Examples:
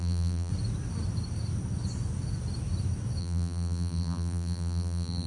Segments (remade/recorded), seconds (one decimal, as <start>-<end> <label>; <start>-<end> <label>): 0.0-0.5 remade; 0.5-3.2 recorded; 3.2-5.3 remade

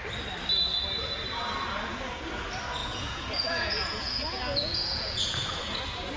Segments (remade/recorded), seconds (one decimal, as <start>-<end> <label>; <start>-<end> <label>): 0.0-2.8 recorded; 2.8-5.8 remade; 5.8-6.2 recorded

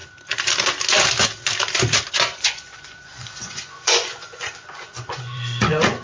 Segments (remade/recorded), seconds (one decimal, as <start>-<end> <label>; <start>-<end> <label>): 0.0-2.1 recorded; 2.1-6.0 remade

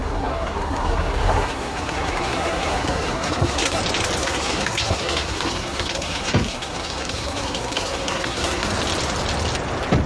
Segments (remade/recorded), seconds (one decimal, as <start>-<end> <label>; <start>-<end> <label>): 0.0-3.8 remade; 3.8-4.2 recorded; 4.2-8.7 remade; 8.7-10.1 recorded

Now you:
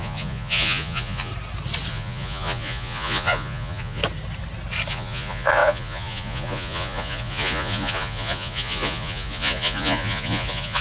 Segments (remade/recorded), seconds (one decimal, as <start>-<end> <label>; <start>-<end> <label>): 0.0-1.3 remade; 1.3-1.9 recorded; 1.9-4.0 remade; 4.0-4.9 recorded; 4.9-10.8 remade